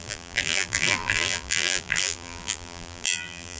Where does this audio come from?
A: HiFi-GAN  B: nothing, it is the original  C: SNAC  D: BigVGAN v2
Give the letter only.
D